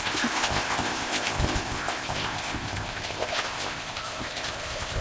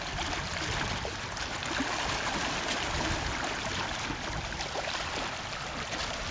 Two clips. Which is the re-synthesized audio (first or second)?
first